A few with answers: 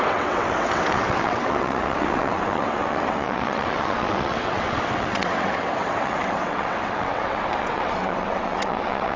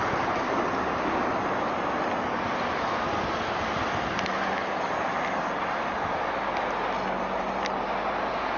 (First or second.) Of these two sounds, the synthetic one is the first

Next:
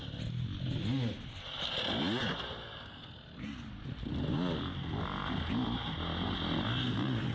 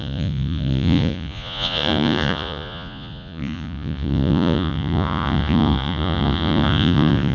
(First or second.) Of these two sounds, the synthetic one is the second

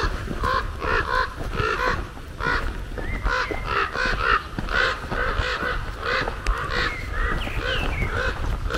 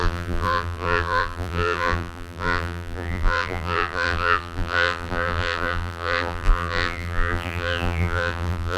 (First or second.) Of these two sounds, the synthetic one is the second